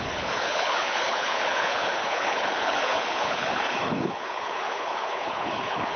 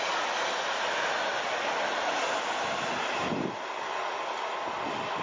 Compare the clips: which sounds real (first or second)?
second